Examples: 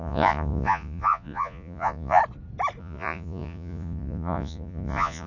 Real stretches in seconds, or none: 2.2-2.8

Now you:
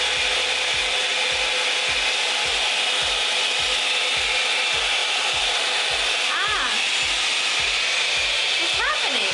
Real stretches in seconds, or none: 0.0-5.0; 6.9-9.3